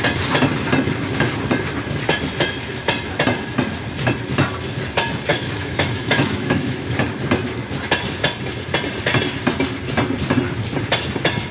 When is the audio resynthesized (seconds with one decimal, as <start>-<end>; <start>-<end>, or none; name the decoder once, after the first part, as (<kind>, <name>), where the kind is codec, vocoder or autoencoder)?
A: 5.3-6.9 (autoencoder, DAC-VAE)